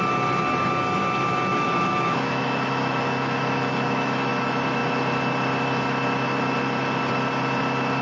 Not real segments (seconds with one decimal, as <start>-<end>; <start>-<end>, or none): 1.5-4.3